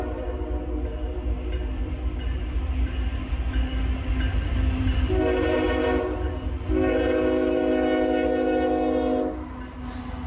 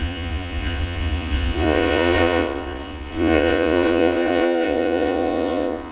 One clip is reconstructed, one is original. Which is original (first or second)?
first